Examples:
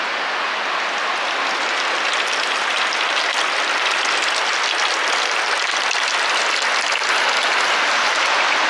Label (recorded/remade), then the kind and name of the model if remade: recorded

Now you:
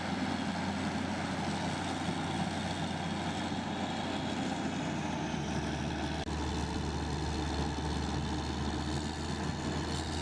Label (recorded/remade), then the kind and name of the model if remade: recorded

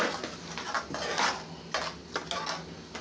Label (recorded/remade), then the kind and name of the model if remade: recorded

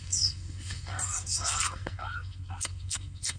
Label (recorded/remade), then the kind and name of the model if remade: remade, codec, SNAC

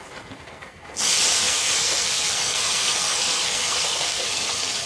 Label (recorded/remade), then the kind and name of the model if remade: remade, codec, SNAC